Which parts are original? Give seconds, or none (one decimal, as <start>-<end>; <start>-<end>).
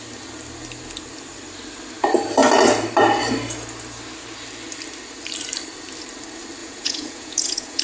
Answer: 0.0-6.6